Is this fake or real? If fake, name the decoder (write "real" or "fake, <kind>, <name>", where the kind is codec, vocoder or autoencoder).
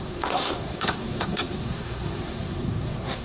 fake, codec, SNAC